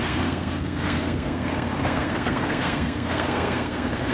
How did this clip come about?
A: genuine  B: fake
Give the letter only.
B